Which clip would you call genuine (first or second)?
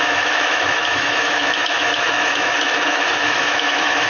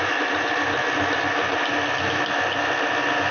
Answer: second